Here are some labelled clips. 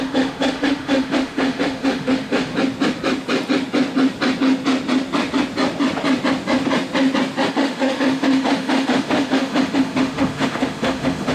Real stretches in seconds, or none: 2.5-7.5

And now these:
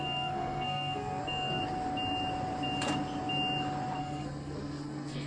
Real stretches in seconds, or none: 1.6-4.0

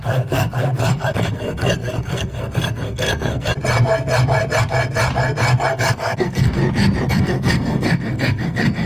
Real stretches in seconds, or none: 3.5-5.7; 6.6-7.1

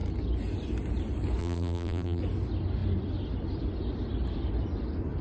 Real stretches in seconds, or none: 0.0-1.4; 2.2-5.2

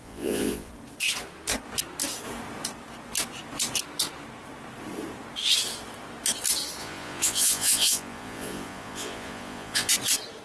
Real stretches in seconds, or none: 0.7-6.8; 9.9-10.4

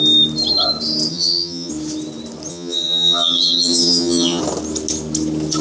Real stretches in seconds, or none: 0.0-1.1; 1.7-2.5; 4.4-5.6

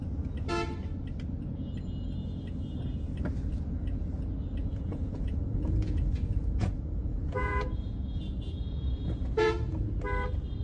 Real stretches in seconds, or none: 0.0-4.6; 9.8-10.6